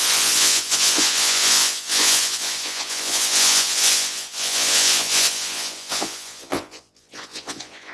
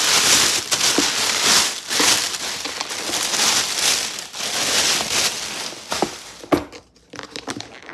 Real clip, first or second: second